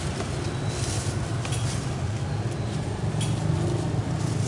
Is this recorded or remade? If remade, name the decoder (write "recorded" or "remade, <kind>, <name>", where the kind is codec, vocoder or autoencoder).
recorded